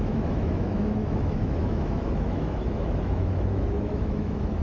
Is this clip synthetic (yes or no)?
yes